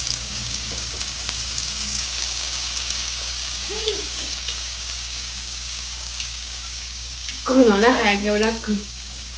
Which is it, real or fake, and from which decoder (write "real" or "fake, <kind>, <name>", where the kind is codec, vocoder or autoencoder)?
fake, codec, DAC